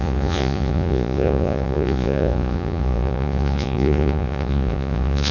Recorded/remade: remade